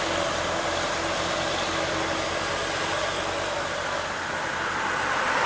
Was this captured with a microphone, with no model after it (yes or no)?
yes